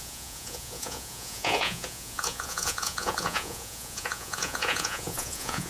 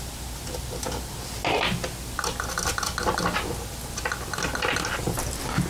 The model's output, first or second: first